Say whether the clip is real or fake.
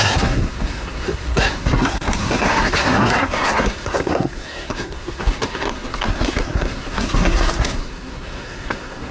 fake